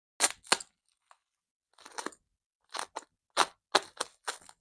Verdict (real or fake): real